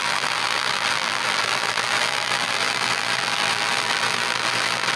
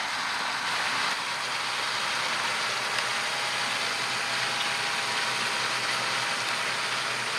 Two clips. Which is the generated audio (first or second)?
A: first